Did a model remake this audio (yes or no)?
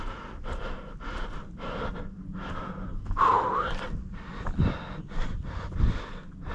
no